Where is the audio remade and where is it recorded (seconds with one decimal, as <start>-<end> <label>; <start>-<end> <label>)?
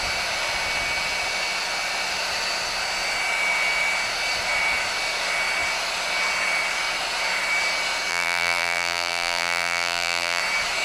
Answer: 0.0-8.1 recorded; 8.1-10.4 remade; 10.4-10.8 recorded